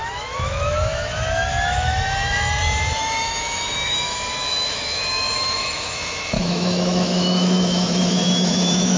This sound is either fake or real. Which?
fake